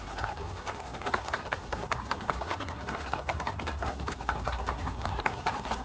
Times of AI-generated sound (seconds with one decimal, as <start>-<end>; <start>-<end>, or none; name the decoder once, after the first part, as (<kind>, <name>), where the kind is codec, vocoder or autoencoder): 0.0-5.8 (codec, SNAC)